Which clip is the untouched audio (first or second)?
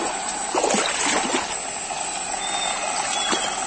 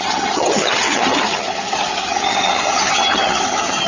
first